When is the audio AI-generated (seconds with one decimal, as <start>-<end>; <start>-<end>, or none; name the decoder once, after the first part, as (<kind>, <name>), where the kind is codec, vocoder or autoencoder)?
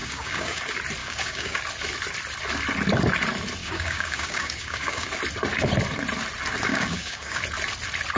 0.0-0.6 (codec, DAC); 1.0-1.6; 3.6-5.1; 6.7-7.4